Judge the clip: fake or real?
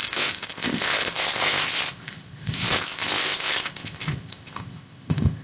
fake